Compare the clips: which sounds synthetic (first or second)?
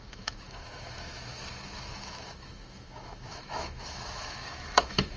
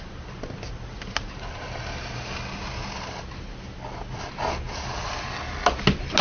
first